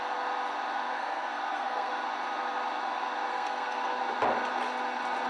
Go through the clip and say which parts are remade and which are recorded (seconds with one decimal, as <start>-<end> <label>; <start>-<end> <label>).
0.0-0.9 recorded; 0.9-1.9 remade; 1.9-3.3 recorded; 3.3-4.0 remade; 4.0-5.3 recorded